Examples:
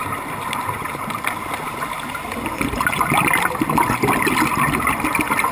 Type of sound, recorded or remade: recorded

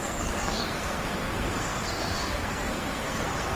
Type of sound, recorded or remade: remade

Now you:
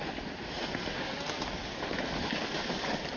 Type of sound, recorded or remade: recorded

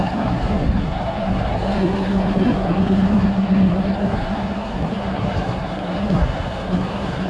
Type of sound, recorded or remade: remade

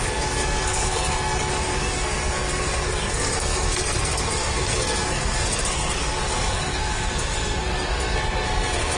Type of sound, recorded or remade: remade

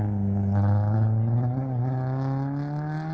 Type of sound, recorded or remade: recorded